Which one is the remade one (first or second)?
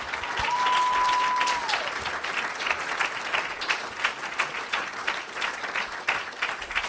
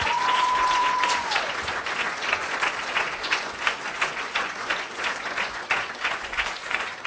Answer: second